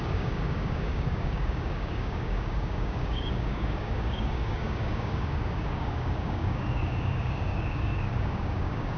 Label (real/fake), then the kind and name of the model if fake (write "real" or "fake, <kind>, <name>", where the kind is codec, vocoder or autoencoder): fake, codec, DAC